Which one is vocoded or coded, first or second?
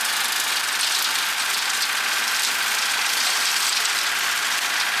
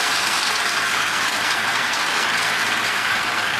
second